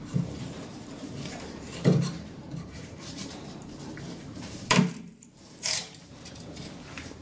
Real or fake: fake